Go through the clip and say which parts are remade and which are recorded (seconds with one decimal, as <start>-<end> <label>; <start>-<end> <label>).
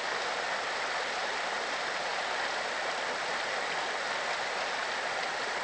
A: 0.0-5.6 recorded